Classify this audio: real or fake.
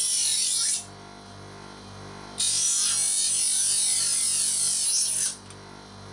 real